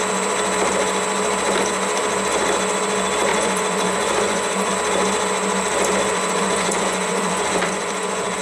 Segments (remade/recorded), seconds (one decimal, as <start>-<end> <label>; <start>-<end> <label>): 0.0-3.3 recorded; 3.3-4.7 remade; 4.7-6.1 recorded; 6.1-8.4 remade